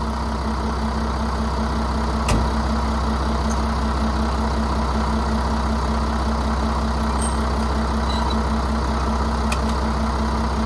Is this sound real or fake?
real